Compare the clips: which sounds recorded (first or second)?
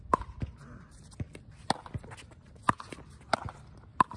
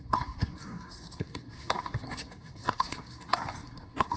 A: first